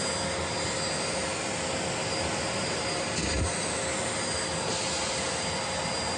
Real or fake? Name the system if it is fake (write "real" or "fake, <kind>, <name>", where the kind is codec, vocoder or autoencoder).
real